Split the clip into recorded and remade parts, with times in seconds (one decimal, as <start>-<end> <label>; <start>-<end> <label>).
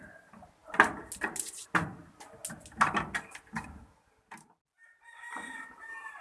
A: 0.0-6.2 recorded